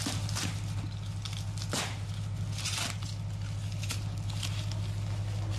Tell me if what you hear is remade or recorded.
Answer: recorded